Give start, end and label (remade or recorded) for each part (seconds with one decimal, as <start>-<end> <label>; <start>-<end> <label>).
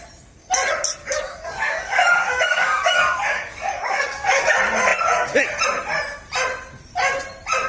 0.0-1.0 recorded; 1.0-4.5 remade; 4.5-7.7 recorded